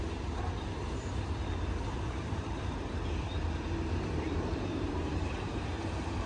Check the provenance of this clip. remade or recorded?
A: remade